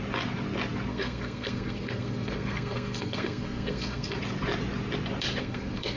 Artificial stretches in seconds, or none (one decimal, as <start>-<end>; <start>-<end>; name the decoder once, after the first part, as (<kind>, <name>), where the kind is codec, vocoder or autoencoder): 0.9-4.2 (codec, SNAC); 5.4-6.0